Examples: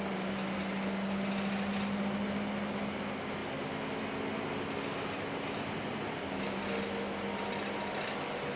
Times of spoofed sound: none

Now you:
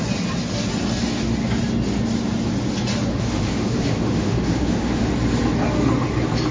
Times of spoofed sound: 3.1-5.1

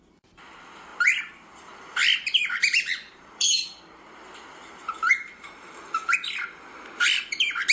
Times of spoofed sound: 0.0-7.7

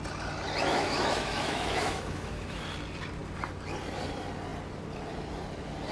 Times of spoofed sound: 0.7-2.6